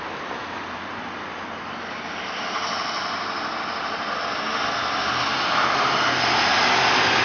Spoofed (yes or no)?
no